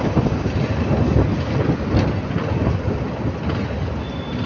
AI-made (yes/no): no